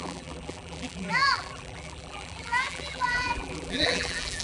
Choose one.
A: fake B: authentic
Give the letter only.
A